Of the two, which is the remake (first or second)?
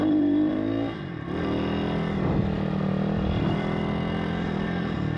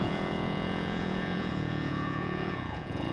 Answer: second